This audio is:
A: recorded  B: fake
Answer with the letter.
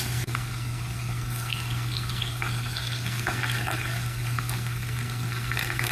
B